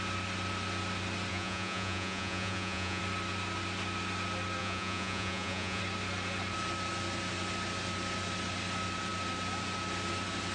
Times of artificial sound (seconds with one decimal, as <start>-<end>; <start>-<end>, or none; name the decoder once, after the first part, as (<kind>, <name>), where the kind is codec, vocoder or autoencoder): 1.3-3.0 (vocoder, Vocos); 4.6-5.8